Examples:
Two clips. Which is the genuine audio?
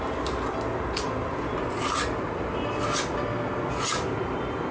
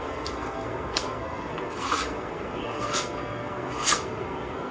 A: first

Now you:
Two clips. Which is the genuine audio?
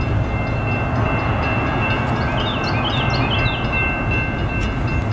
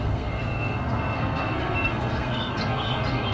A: first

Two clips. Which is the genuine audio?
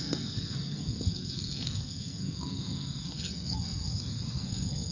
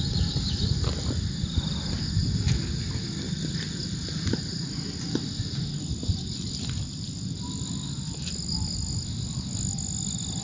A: second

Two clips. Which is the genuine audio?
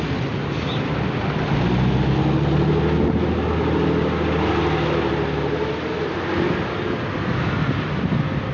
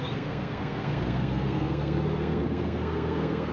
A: first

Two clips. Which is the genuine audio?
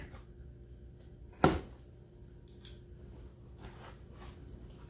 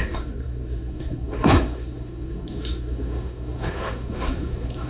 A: first